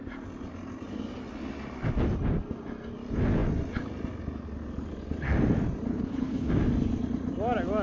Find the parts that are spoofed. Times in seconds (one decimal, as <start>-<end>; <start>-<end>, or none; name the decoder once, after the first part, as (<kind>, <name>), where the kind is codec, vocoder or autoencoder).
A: 5.9-6.5 (codec, HILCodec)